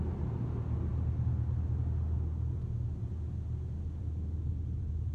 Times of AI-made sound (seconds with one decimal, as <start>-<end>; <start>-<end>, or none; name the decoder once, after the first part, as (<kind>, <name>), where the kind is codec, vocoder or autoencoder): none